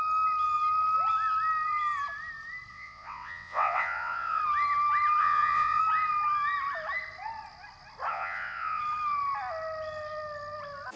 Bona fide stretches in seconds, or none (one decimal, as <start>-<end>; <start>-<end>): 0.0-2.7; 4.4-5.2; 5.8-8.1; 8.8-11.0